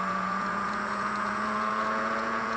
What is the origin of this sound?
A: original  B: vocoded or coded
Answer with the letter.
B